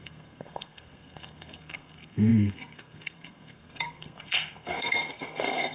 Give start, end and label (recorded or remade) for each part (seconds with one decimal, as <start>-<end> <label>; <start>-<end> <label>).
0.0-5.7 remade